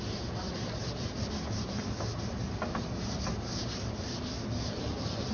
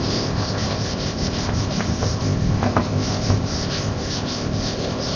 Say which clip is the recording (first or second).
first